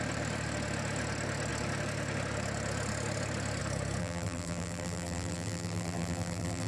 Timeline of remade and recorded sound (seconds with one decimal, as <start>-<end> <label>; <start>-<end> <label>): 0.0-4.0 recorded; 4.0-6.7 remade